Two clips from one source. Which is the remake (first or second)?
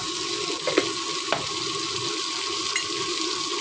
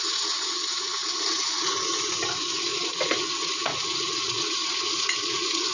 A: second